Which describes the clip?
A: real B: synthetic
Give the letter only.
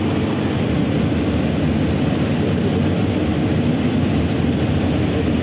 A